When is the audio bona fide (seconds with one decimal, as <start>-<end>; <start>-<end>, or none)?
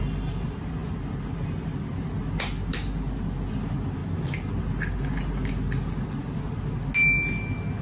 0.0-7.8